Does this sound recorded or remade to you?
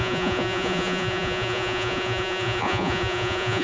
remade